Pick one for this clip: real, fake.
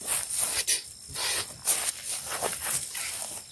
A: real